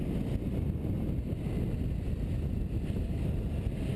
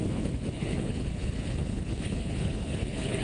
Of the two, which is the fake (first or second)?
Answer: second